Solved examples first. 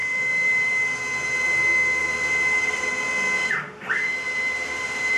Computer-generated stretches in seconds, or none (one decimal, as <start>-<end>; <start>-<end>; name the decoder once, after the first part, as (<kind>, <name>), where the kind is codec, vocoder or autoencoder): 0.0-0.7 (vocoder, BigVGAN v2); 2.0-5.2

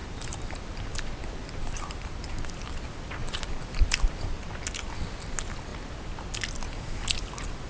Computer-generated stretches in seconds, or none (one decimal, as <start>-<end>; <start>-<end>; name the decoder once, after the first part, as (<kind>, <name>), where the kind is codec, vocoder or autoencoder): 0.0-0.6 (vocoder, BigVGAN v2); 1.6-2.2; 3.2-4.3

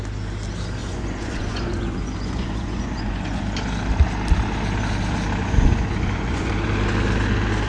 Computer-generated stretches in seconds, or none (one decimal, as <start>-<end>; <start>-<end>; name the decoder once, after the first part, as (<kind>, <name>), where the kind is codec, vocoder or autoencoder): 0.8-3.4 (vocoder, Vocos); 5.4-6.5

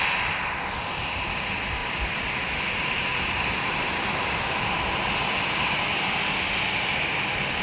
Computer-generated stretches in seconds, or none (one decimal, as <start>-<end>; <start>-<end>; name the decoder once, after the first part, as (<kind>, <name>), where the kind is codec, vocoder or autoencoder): none

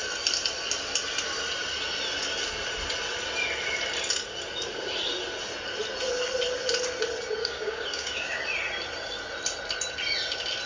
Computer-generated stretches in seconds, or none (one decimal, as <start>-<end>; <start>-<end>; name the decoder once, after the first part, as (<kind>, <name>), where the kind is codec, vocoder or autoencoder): 7.4-8.4 (codec, DAC)

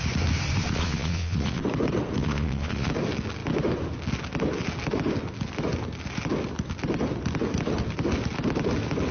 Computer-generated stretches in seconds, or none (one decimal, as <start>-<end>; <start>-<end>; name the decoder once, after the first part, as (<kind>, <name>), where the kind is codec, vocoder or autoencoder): 0.6-1.6 (vocoder, Vocos); 2.2-2.9

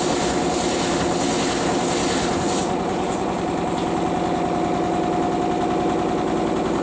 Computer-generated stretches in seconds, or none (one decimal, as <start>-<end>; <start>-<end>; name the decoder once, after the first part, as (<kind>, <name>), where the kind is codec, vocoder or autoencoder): 2.3-3.4 (vocoder, Vocos)

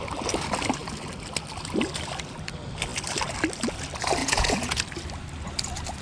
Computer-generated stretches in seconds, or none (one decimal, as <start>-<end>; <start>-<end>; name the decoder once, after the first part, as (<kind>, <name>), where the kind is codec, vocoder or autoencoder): 4.2-4.8 (vocoder, Vocos)